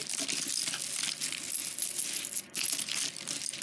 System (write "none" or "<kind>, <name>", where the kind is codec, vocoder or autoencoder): none